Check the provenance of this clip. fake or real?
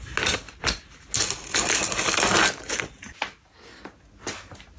real